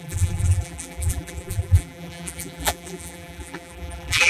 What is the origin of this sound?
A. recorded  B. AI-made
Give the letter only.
B